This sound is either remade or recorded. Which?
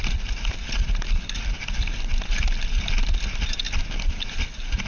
recorded